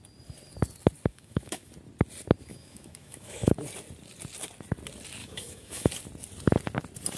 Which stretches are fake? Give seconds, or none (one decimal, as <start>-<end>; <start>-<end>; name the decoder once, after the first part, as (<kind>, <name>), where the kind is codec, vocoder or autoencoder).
1.1-1.7 (autoencoder, DAC-VAE); 2.5-3.5; 5.2-5.9